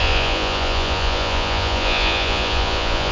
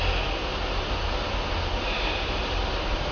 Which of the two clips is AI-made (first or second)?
first